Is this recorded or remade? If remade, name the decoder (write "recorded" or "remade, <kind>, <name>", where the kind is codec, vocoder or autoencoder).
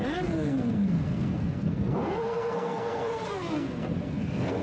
remade, codec, SNAC